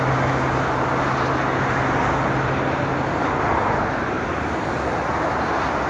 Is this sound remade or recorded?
recorded